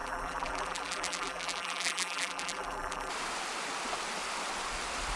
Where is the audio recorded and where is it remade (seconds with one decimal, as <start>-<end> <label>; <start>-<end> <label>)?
0.0-3.1 remade; 3.1-5.2 recorded